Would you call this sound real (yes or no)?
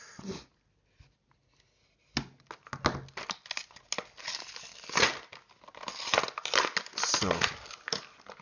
yes